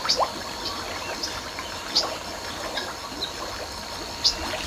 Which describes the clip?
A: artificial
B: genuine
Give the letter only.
B